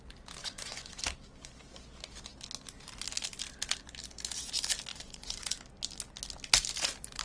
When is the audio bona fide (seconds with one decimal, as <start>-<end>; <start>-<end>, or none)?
0.0-0.4; 1.0-4.9; 5.6-7.2